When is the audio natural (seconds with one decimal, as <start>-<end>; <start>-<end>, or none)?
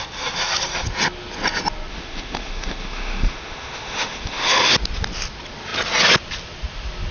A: 0.0-1.9; 4.7-7.1